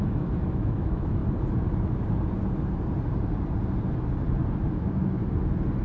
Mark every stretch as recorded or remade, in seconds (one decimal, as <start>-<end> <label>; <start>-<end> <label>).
0.0-1.2 remade; 1.2-4.7 recorded; 4.7-5.2 remade; 5.2-5.8 recorded